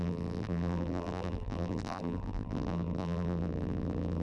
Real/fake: fake